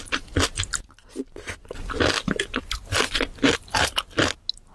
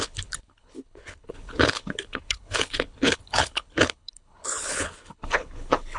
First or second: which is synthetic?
second